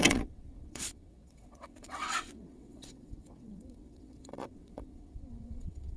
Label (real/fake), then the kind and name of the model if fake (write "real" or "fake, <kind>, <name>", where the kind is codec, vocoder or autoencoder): fake, vocoder, WaveNeXt